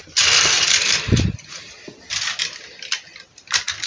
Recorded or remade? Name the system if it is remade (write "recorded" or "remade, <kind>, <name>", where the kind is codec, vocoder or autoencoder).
recorded